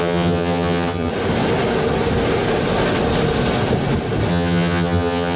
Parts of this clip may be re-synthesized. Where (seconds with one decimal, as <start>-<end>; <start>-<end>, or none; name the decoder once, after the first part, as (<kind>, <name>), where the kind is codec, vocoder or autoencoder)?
0.0-1.1 (vocoder, HiFi-GAN); 4.3-5.4